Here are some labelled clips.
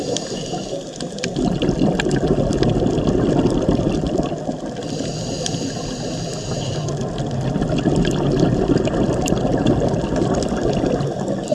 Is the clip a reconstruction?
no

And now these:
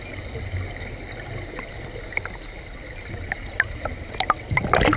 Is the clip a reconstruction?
no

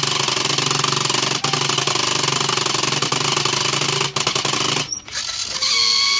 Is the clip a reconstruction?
no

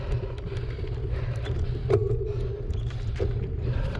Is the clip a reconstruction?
no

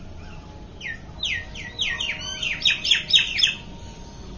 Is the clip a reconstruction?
no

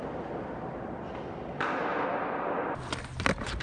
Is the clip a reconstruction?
no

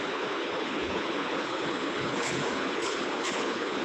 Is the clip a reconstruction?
yes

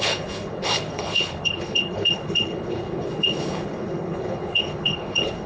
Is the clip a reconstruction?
yes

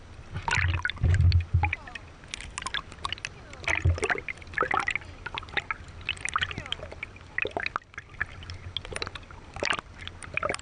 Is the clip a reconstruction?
no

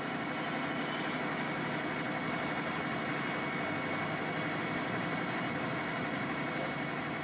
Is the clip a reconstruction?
no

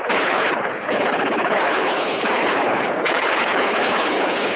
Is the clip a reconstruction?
yes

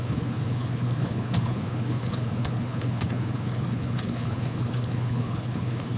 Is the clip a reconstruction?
yes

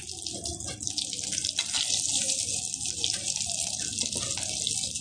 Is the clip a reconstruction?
no